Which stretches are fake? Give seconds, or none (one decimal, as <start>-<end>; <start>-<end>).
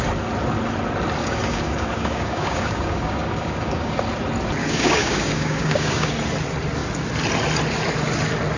1.2-4.0; 4.6-6.1